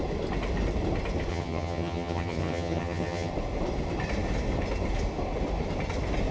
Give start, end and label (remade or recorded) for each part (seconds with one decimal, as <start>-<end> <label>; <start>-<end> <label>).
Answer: 0.0-1.3 recorded; 1.3-3.3 remade; 3.3-6.3 recorded